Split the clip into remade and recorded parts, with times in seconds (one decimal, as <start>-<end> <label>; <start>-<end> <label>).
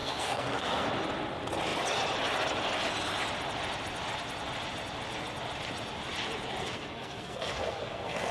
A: 0.0-0.9 remade; 0.9-6.6 recorded; 6.6-8.3 remade